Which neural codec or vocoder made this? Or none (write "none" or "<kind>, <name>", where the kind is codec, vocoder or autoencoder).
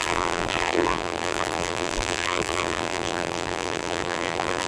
vocoder, BigVGAN v2